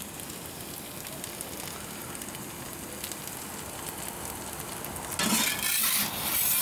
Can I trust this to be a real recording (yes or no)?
yes